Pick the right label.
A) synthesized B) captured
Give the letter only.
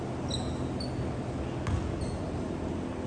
B